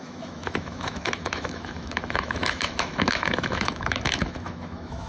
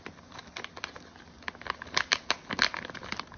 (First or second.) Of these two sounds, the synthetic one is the first